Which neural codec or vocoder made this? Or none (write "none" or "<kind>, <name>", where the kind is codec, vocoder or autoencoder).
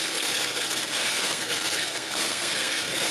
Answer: codec, SNAC